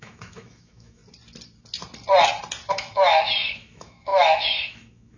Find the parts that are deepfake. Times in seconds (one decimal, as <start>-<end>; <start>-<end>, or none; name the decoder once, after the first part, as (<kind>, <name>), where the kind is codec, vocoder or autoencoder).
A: 0.0-1.0 (autoencoder, DAC-VAE); 2.7-5.2